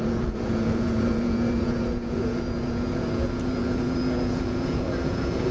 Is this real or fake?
fake